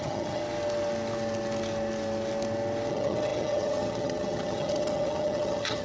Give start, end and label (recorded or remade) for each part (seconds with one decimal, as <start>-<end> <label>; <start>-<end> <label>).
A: 0.0-0.4 remade; 0.4-2.9 recorded; 2.9-5.8 remade